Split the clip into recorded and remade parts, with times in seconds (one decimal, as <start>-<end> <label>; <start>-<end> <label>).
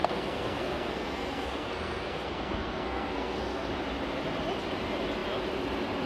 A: 0.0-3.7 remade; 3.7-6.1 recorded